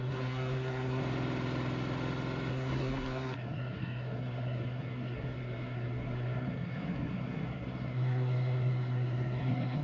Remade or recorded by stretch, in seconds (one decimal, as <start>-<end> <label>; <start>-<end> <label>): 0.0-1.0 remade; 1.0-2.5 recorded; 2.5-9.8 remade